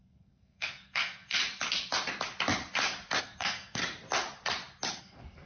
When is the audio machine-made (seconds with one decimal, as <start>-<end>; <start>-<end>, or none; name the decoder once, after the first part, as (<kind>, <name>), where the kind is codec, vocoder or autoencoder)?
0.0-1.4 (codec, SNAC); 3.2-3.8; 5.0-5.5